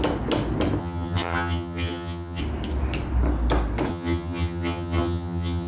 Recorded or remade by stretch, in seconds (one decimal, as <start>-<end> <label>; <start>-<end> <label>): 0.0-0.8 recorded; 0.8-2.4 remade; 2.4-3.9 recorded; 3.9-5.7 remade